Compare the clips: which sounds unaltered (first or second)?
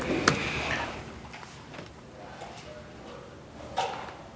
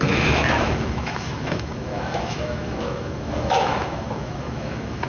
first